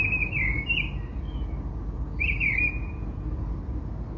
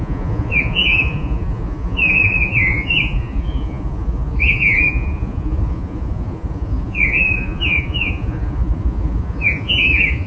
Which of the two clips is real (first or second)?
first